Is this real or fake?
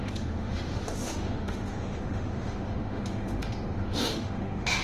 fake